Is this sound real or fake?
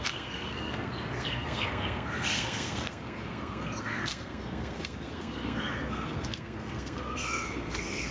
fake